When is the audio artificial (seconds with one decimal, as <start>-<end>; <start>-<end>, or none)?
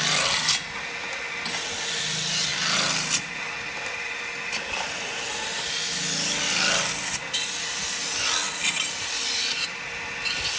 none